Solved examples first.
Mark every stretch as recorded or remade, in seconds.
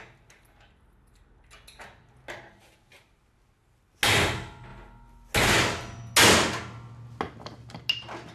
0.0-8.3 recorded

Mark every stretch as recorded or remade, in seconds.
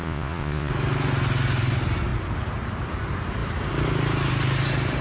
0.0-0.7 remade; 0.7-5.0 recorded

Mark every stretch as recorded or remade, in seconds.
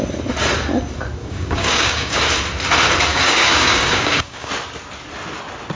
0.0-1.2 recorded; 1.2-2.2 remade; 2.2-3.1 recorded; 3.1-4.5 remade; 4.5-5.7 recorded